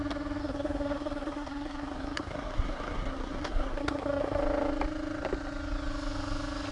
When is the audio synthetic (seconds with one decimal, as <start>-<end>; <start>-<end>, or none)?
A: 0.4-4.4